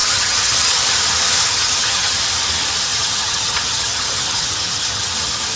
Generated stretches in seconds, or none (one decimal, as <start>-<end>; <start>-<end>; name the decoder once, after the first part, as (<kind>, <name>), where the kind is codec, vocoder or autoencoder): 0.0-0.8 (vocoder, HiFi-GAN); 1.4-2.2; 2.9-5.1